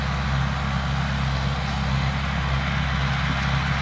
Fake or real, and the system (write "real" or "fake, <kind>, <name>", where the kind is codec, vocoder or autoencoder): real